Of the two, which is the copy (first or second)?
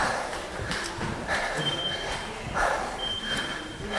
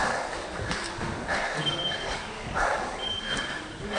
second